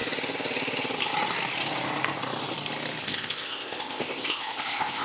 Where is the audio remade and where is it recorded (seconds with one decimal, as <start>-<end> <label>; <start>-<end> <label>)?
0.0-3.0 recorded; 3.0-5.0 remade